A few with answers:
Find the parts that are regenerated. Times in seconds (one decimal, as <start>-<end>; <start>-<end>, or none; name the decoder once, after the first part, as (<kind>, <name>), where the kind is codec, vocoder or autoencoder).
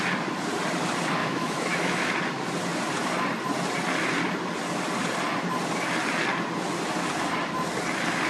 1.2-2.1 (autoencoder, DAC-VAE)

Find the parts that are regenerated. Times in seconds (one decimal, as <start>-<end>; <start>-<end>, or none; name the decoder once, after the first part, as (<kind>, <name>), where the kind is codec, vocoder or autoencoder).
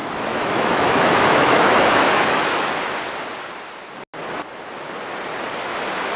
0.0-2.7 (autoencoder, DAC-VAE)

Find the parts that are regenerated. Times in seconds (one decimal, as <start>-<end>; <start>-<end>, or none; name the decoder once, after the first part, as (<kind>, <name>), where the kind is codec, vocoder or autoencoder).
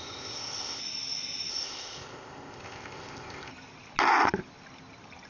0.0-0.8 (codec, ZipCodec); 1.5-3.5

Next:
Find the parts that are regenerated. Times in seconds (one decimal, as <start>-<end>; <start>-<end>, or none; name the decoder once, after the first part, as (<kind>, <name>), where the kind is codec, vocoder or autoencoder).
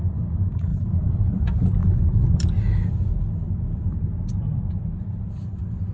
0.7-1.4 (vocoder, BigVGAN v2)